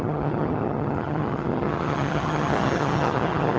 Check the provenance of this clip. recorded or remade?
remade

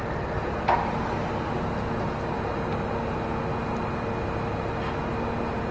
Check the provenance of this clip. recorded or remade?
recorded